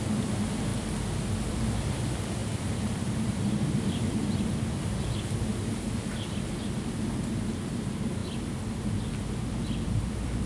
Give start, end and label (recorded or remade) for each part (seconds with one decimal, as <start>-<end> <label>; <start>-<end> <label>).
0.0-0.7 remade; 0.7-1.5 recorded; 1.5-10.5 remade